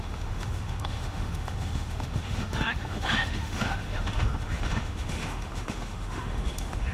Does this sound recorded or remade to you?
remade